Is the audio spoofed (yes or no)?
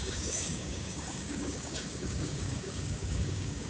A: yes